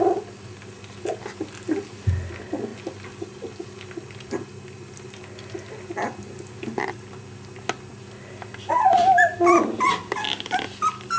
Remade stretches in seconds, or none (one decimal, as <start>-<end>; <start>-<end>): none